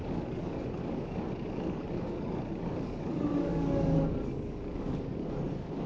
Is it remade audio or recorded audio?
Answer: remade